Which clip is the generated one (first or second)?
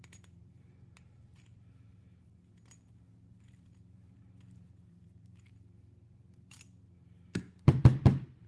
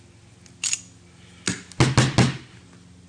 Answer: first